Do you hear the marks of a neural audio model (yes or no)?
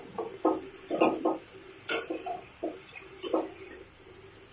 yes